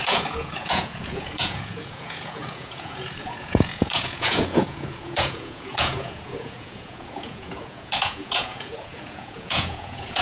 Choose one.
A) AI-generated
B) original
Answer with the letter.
A